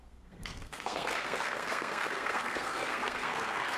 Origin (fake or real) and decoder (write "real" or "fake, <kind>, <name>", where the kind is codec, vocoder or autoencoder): fake, codec, SNAC